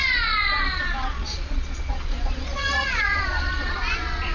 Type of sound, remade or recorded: remade